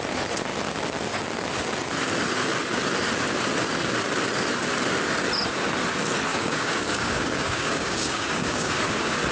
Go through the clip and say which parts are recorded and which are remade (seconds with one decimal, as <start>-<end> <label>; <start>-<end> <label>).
0.0-6.3 recorded; 6.3-8.8 remade; 8.8-9.3 recorded